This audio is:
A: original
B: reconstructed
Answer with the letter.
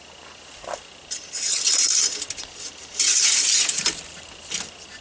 A